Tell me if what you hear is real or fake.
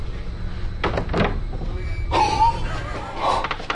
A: real